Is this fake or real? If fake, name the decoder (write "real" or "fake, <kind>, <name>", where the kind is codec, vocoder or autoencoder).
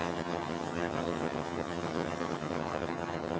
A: fake, vocoder, HiFi-GAN